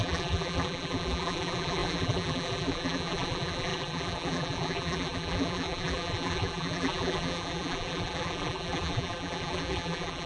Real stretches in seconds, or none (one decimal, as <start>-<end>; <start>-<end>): none